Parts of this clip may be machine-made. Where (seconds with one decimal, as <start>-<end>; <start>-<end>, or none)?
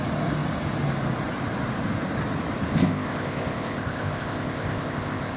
2.8-5.4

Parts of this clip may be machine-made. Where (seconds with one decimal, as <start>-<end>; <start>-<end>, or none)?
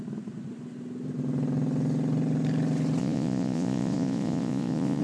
3.0-5.0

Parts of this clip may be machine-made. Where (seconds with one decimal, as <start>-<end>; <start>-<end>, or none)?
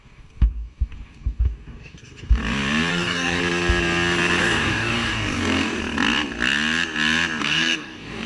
0.0-2.4; 2.9-3.4; 4.4-5.8; 7.4-8.3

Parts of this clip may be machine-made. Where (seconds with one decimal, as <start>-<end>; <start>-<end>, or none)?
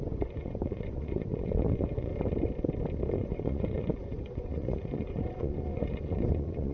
0.0-2.1; 3.1-6.7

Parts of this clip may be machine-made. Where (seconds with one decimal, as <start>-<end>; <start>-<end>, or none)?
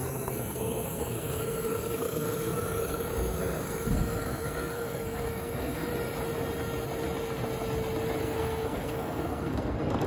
0.0-5.9; 8.2-10.1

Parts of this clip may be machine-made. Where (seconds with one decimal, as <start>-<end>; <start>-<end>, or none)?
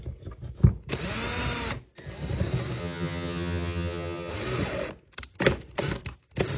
2.8-4.3